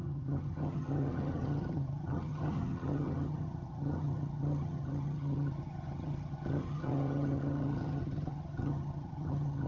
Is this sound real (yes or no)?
no